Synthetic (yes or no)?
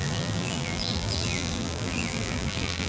yes